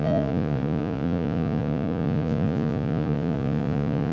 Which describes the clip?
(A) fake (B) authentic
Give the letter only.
A